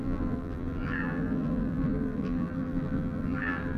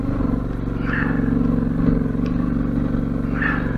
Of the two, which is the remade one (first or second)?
first